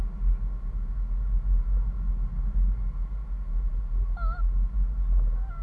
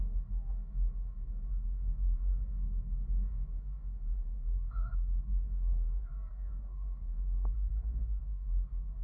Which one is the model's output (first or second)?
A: second